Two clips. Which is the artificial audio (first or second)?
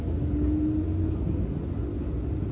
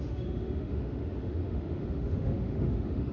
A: second